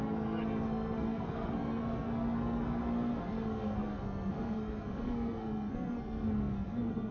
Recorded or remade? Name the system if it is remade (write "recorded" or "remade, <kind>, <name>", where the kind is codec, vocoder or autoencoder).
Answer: remade, codec, SNAC